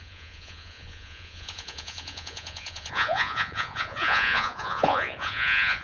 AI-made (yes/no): yes